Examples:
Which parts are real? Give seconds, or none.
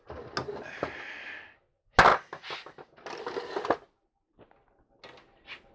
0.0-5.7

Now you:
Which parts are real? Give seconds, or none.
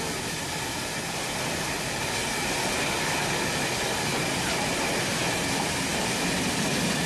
0.0-7.1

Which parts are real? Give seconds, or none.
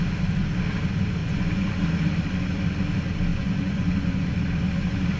0.0-1.2; 1.7-3.3; 4.3-5.2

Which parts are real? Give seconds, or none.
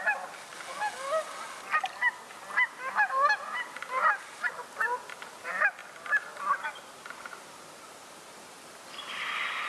0.0-9.7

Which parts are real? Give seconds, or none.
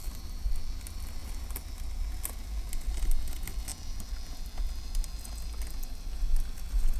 0.5-7.0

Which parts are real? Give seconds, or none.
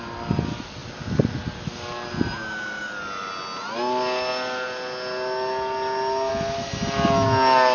0.0-7.7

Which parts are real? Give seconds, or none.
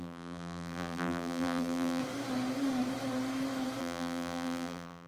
2.0-3.8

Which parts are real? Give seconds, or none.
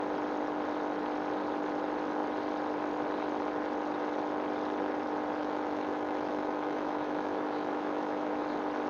0.0-5.4; 8.4-8.9